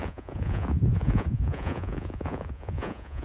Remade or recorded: remade